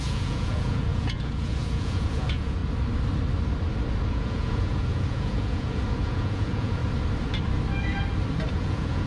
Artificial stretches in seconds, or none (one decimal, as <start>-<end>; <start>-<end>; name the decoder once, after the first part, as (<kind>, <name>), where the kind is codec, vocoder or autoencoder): 0.0-2.6 (vocoder, Vocos); 4.1-6.8; 8.5-9.1